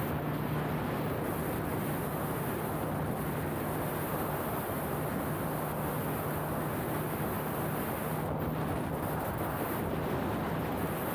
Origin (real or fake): real